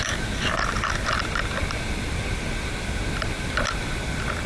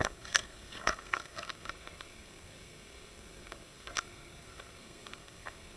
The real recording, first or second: first